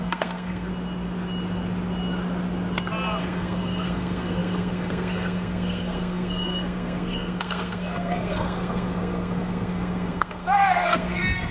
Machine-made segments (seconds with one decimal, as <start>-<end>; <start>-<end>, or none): 0.0-0.7; 3.2-11.5